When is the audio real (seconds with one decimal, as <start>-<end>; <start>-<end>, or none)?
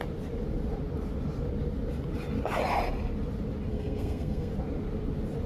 0.0-3.7; 4.5-5.5